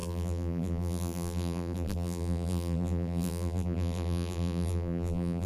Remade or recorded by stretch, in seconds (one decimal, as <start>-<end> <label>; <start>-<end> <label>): 0.0-5.5 remade